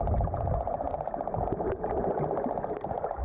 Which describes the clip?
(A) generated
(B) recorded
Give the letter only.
B